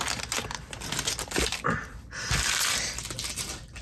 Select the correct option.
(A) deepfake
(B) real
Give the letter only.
B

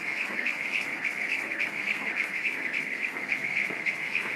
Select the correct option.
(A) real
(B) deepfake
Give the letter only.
B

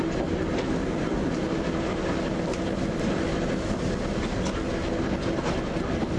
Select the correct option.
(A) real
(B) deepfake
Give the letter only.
A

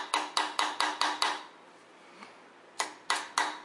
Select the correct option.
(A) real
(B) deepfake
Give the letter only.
A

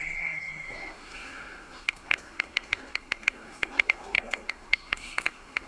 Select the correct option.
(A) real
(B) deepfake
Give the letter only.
B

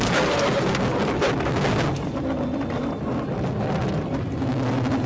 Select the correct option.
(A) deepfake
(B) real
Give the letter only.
B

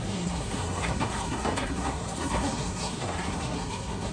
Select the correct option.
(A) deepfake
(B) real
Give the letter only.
A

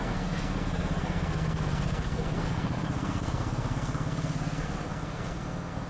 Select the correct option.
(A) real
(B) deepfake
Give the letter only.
B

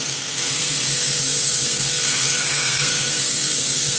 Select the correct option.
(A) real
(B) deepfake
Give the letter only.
B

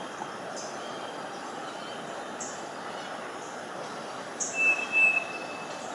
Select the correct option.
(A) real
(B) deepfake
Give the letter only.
A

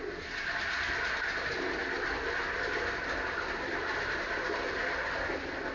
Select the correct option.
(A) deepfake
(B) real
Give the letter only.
B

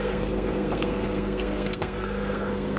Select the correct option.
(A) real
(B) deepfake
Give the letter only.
B